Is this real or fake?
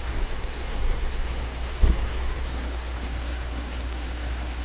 fake